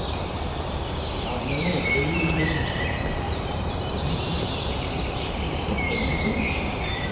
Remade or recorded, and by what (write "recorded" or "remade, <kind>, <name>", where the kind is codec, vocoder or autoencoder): remade, vocoder, BigVGAN v2